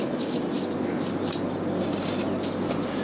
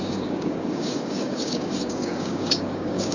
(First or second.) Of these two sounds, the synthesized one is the second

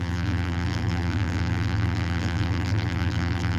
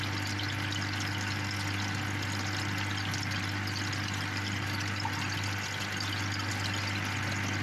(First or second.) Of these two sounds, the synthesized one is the first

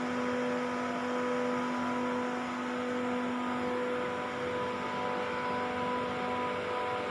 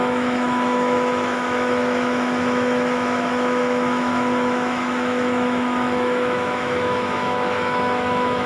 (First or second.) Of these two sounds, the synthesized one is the second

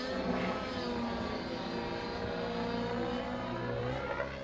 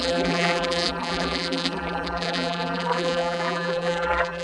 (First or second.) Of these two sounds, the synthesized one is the second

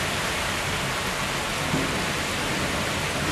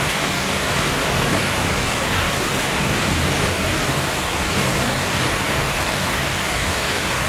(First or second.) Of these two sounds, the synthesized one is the second